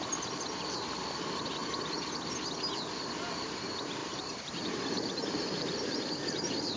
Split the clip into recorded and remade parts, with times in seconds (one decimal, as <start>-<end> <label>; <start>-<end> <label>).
0.0-4.0 recorded; 4.0-6.8 remade